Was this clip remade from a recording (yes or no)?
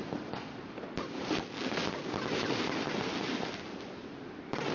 no